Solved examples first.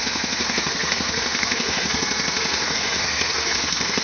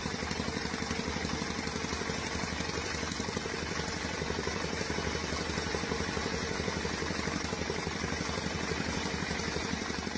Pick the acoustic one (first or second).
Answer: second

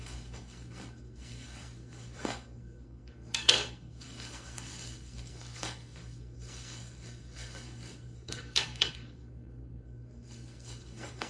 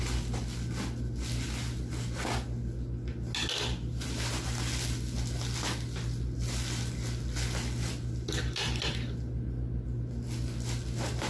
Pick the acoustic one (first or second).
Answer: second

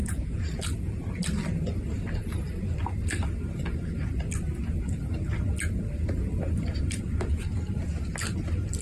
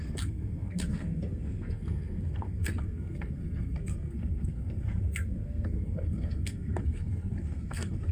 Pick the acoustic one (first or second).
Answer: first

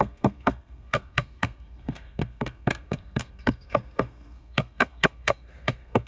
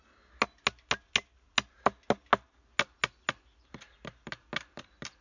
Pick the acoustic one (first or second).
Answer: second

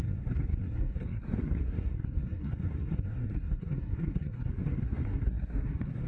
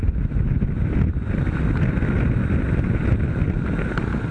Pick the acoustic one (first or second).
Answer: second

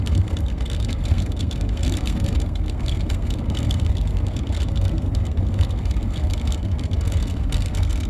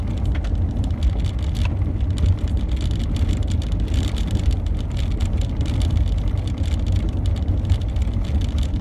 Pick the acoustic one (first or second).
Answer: second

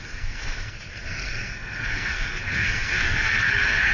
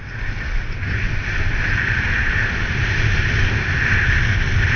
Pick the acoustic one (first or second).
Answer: second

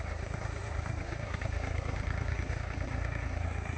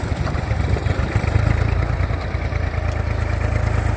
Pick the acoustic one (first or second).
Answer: second